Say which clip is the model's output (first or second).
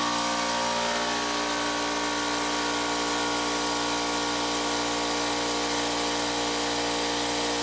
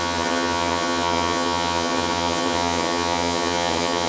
second